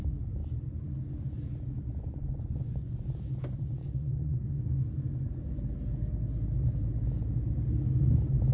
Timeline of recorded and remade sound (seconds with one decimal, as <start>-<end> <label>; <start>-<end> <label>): 0.0-1.9 recorded; 1.9-3.1 remade; 3.1-3.8 recorded; 3.8-4.6 remade; 4.6-8.5 recorded